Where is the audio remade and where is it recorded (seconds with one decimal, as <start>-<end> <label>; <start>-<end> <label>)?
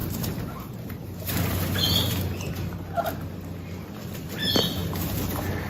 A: 0.0-5.7 recorded